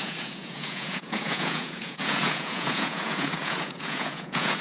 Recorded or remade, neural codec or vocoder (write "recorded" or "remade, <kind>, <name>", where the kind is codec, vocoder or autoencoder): remade, vocoder, Vocos